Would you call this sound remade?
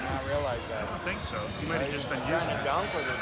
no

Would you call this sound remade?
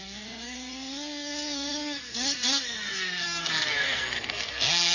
yes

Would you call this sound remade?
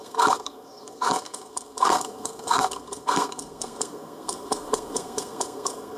yes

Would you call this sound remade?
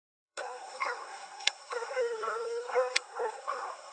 yes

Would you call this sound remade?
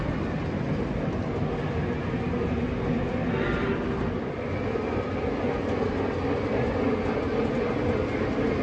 no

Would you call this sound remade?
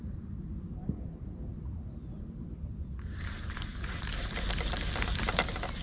no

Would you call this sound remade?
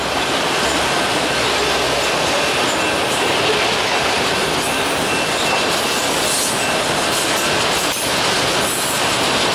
no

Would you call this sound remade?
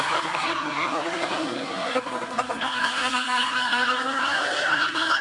yes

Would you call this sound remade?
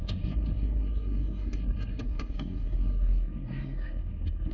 yes